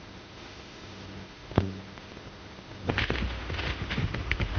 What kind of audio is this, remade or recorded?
remade